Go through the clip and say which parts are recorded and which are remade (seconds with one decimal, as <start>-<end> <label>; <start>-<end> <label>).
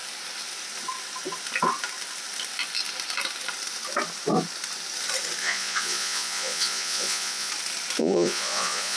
0.0-5.4 recorded; 5.4-7.5 remade; 7.5-8.0 recorded; 8.0-9.0 remade